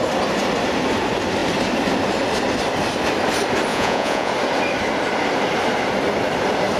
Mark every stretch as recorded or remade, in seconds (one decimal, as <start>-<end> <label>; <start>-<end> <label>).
0.0-3.7 recorded; 3.7-4.3 remade; 4.3-6.8 recorded